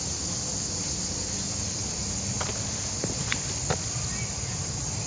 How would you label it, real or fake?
real